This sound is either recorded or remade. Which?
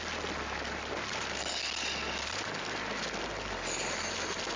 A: recorded